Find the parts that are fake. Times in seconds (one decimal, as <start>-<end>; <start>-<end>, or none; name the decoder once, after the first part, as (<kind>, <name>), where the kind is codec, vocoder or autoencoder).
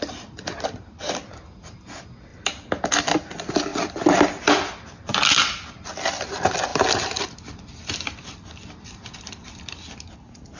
none